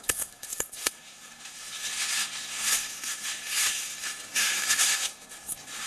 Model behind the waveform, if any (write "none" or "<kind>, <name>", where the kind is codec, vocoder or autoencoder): codec, SNAC